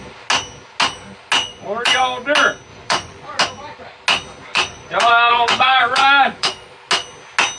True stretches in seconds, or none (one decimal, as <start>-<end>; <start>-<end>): 0.0-1.5; 2.0-2.7; 3.4-4.5; 6.7-7.6

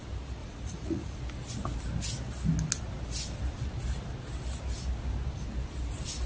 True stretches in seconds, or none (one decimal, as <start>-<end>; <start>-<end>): 0.0-0.4; 1.2-6.3